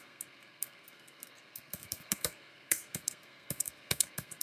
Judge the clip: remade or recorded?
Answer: remade